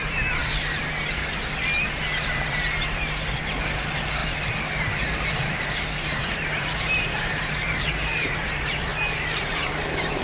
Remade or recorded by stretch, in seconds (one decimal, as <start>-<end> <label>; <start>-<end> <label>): 0.0-0.4 remade; 0.4-3.6 recorded; 3.6-4.2 remade; 4.2-5.3 recorded; 5.3-8.9 remade; 8.9-9.5 recorded; 9.5-10.2 remade